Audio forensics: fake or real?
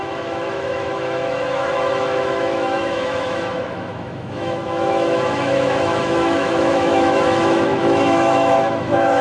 fake